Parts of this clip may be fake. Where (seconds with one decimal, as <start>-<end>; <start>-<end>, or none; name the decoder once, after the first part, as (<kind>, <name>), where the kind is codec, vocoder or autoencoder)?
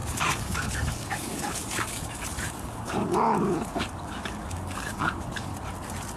0.0-5.5 (codec, DAC)